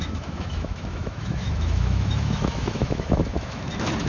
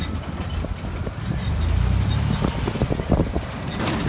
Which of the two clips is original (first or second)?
second